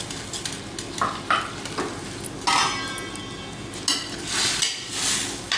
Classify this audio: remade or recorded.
recorded